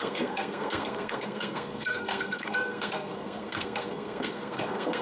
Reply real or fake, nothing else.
fake